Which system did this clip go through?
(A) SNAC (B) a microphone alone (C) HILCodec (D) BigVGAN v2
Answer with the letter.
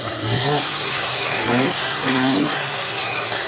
A